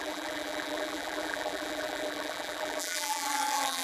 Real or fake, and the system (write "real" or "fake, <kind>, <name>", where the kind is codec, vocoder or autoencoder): fake, vocoder, BigVGAN v2